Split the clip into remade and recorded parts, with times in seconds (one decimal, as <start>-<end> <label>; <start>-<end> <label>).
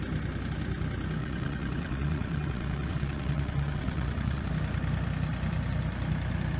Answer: 0.0-1.2 recorded; 1.2-4.5 remade; 4.5-6.6 recorded